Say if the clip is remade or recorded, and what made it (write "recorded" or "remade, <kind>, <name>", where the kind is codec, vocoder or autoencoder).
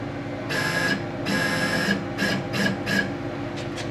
recorded